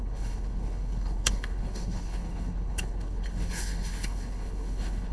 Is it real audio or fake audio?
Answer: fake